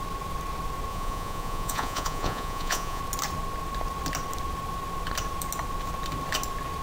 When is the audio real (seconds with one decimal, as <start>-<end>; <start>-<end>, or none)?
0.0-0.9; 3.0-6.8